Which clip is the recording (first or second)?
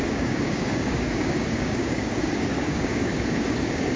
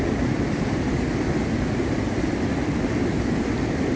second